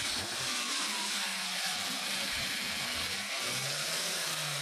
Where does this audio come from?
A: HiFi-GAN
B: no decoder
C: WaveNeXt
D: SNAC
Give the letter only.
D